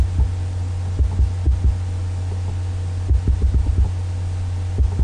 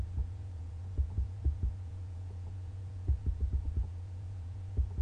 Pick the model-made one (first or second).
second